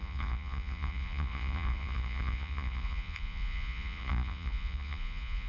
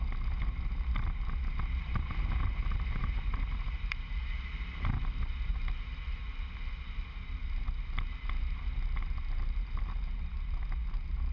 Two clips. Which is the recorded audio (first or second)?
second